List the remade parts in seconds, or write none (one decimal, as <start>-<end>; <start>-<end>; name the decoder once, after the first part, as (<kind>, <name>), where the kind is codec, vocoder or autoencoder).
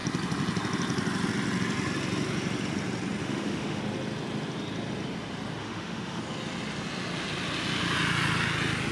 3.2-3.8 (autoencoder, DAC-VAE); 5.6-6.2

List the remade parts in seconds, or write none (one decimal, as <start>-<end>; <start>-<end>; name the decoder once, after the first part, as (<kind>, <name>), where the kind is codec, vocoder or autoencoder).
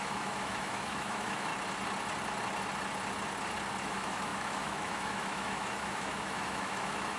0.0-1.5 (autoencoder, DAC-VAE); 3.8-7.2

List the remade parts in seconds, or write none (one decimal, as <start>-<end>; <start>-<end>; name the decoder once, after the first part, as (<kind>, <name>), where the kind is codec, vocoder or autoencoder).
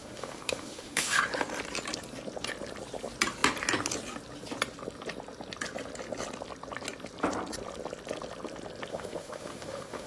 0.0-1.2 (autoencoder, DAC-VAE); 8.9-10.1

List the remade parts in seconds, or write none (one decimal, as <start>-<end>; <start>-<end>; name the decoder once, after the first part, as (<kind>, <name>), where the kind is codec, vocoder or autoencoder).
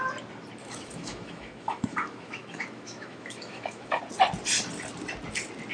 0.6-4.0 (autoencoder, DAC-VAE)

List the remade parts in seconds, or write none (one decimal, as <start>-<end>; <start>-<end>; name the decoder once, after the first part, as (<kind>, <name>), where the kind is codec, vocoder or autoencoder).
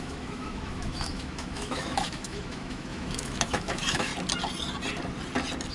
0.0-4.1 (autoencoder, DAC-VAE)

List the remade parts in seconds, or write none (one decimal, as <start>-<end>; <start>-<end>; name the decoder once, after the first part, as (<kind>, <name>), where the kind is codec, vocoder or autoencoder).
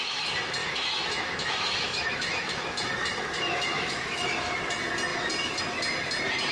0.6-4.5 (autoencoder, DAC-VAE)